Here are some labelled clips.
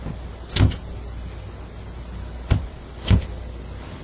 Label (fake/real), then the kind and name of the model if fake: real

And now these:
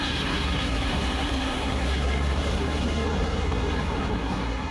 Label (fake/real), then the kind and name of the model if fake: fake, codec, SNAC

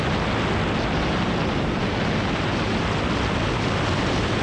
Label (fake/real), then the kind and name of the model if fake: real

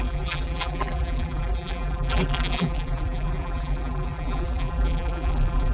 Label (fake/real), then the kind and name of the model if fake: fake, vocoder, BigVGAN v2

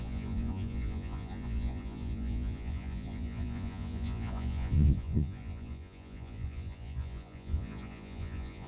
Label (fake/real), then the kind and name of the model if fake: fake, vocoder, Vocos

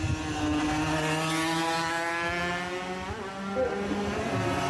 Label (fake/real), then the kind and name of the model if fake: real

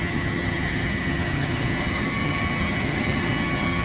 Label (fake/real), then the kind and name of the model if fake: fake, vocoder, HiFi-GAN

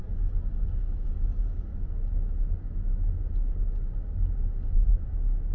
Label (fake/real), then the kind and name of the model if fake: real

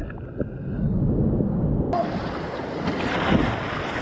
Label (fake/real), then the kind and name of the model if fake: real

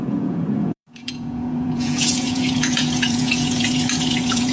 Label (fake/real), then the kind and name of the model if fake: fake, vocoder, Vocos